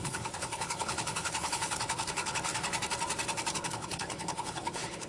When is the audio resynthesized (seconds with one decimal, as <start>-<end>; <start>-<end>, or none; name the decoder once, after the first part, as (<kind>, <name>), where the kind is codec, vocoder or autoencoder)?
0.0-2.5 (codec, HILCodec); 3.5-5.1